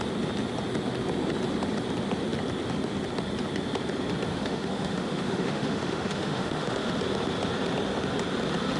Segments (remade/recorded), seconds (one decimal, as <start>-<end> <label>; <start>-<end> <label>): 0.0-4.3 recorded; 4.3-6.9 remade; 6.9-8.8 recorded

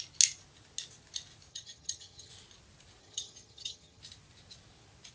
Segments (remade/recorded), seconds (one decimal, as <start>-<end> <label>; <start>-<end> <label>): 0.0-1.5 recorded; 1.5-2.3 remade; 2.3-3.0 recorded; 3.0-4.0 remade; 4.0-5.1 recorded